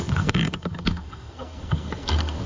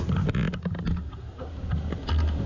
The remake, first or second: first